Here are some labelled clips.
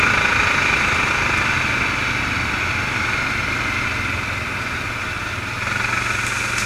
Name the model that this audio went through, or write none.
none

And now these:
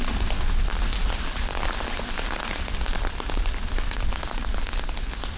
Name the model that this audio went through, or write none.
none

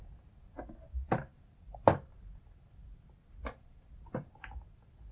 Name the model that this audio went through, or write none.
none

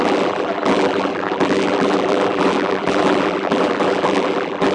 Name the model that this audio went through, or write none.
vocoder, BigVGAN v2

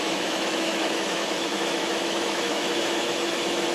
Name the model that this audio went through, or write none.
autoencoder, DAC-VAE